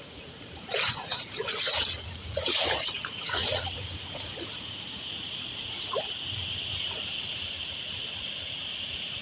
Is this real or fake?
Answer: fake